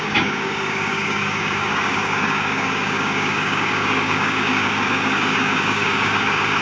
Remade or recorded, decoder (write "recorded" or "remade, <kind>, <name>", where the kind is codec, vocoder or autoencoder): remade, codec, DAC